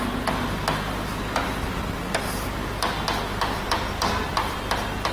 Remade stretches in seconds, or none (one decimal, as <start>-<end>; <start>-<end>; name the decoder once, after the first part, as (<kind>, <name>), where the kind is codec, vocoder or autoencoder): 3.3-4.6 (vocoder, BigVGAN v2)